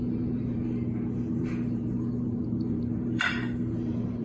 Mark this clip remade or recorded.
remade